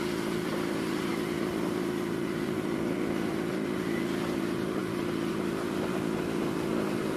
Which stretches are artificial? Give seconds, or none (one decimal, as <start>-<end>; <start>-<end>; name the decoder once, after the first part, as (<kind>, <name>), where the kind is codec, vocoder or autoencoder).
0.5-1.1 (vocoder, BigVGAN v2)